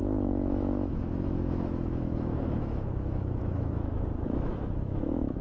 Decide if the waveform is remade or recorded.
remade